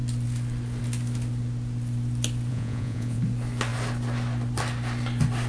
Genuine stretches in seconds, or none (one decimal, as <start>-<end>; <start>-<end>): 0.0-2.5; 3.2-5.5